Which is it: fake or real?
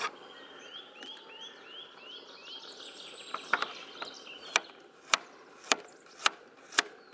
real